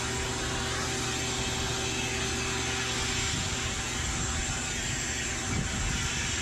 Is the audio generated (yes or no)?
no